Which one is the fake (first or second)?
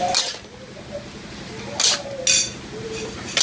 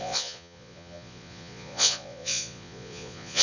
second